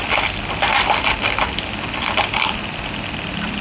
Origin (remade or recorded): recorded